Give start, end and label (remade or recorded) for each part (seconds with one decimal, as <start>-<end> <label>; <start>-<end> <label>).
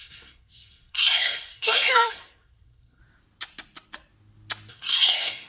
0.0-3.0 remade; 3.0-4.7 recorded; 4.7-5.5 remade